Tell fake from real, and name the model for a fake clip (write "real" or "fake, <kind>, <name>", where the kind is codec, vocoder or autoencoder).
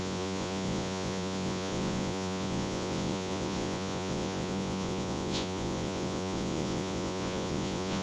fake, vocoder, Vocos